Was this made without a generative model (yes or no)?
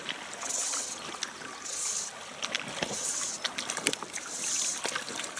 yes